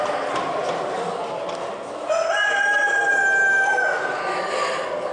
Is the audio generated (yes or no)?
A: no